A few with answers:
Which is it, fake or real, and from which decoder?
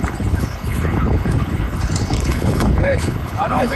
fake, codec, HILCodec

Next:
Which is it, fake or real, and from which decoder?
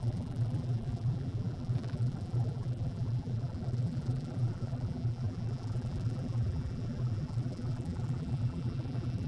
fake, vocoder, BigVGAN v2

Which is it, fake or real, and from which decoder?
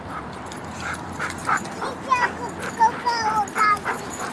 real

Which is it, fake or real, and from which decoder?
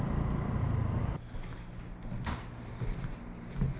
real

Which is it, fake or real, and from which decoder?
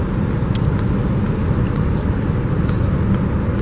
real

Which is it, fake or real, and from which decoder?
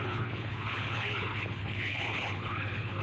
fake, codec, HILCodec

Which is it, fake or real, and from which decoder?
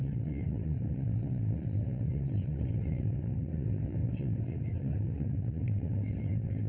fake, vocoder, WaveNeXt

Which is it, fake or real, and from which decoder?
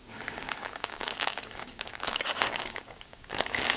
fake, codec, DAC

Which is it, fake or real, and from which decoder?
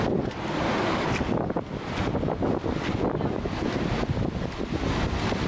real